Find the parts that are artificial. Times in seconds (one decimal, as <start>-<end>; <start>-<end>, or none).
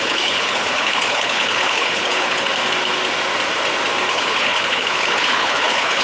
0.0-2.5; 4.1-6.0